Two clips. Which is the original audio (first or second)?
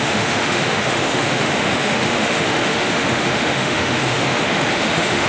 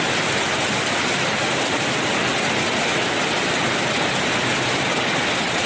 second